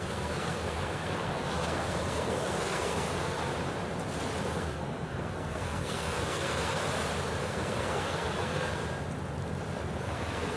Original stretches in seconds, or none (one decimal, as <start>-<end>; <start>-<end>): 3.5-4.4; 6.8-7.4; 8.8-10.0